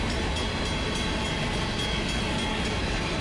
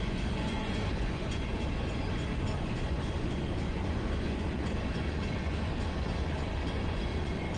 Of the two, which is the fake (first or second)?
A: second